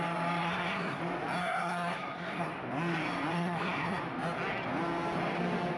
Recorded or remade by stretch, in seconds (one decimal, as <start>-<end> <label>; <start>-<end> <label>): 0.0-0.4 recorded; 0.4-1.0 remade; 1.0-1.4 recorded; 1.4-2.5 remade; 2.5-3.3 recorded; 3.3-4.0 remade; 4.0-5.8 recorded